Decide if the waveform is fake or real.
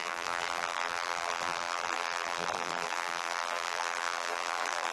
fake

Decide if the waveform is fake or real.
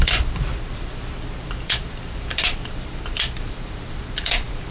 fake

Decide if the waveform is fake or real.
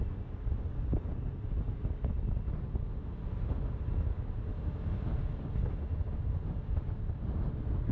real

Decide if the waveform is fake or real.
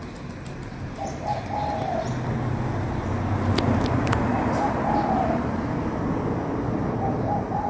real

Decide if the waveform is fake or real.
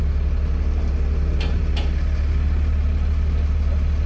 fake